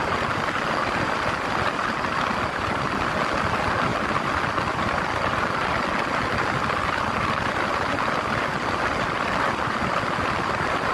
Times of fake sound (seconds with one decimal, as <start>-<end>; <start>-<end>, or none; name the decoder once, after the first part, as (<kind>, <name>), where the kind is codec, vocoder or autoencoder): none